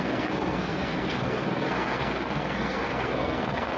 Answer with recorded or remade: remade